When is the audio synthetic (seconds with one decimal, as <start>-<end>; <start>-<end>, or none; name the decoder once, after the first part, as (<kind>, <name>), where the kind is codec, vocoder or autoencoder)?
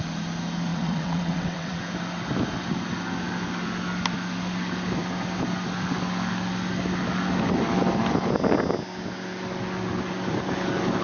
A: 0.7-1.8 (vocoder, WaveNeXt)